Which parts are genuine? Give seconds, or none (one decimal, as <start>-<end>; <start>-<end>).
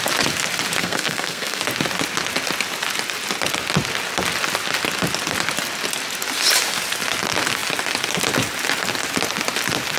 0.0-0.8; 1.6-10.0